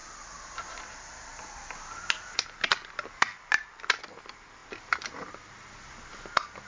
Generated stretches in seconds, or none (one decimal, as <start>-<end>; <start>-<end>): none